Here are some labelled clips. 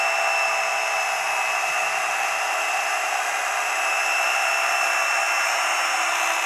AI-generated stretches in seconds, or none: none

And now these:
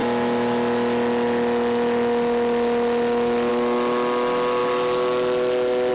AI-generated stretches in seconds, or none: none

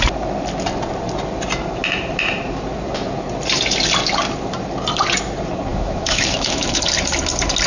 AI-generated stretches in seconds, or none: 5.7-6.8

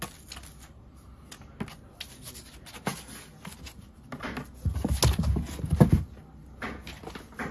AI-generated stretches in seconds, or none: none

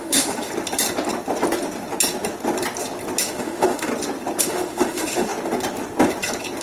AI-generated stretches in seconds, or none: 0.0-0.5; 3.2-3.9; 4.4-5.3

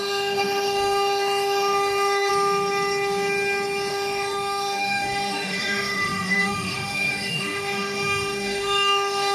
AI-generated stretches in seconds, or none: 0.0-2.3; 3.9-9.3

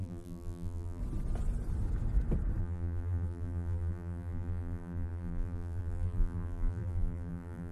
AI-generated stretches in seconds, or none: 0.0-1.0; 2.6-7.7

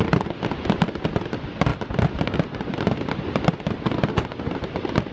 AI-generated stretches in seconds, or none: none